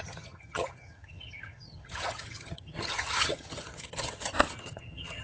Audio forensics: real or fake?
fake